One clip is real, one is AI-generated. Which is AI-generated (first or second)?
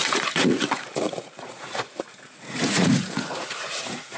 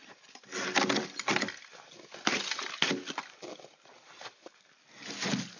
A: first